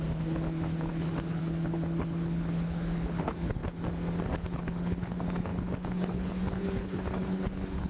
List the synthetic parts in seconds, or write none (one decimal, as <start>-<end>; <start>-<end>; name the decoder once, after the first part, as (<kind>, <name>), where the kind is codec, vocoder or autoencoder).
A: 0.0-3.6 (codec, HILCodec); 4.4-7.9